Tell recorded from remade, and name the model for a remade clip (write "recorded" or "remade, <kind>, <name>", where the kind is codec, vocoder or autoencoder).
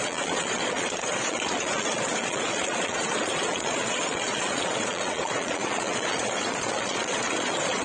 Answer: remade, vocoder, Vocos